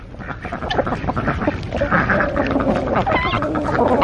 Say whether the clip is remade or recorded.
recorded